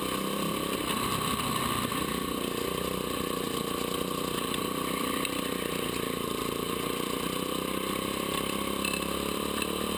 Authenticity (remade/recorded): recorded